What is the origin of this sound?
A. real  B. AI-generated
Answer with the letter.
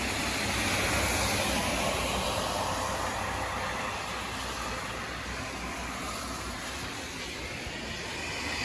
A